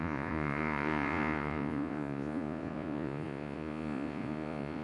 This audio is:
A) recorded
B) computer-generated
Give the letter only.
B